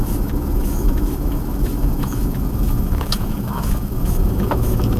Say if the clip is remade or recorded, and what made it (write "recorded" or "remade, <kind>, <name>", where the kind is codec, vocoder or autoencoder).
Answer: remade, autoencoder, DAC-VAE